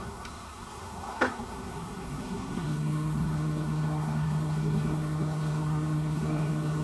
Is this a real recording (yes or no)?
no